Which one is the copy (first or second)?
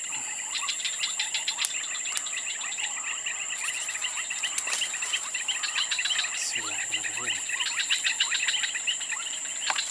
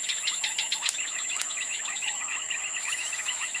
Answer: second